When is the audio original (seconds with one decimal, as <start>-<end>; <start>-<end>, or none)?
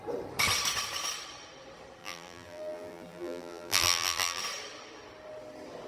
0.0-2.0; 4.4-5.9